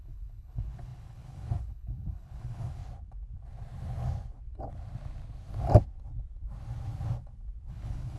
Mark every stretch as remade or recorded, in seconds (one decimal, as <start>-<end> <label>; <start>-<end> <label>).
0.0-2.8 remade; 2.8-7.7 recorded; 7.7-8.2 remade